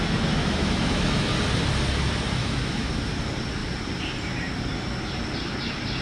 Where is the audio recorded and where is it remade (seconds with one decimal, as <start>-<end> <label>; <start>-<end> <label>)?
0.0-0.4 recorded; 0.4-1.3 remade; 1.3-2.4 recorded; 2.4-2.9 remade; 2.9-6.0 recorded